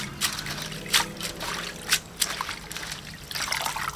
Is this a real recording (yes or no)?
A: yes